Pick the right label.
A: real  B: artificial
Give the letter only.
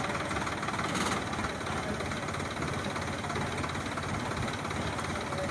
A